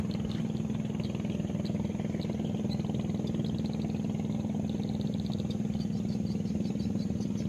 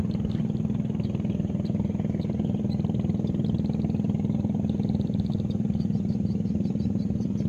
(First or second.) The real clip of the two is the first